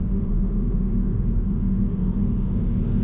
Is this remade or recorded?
remade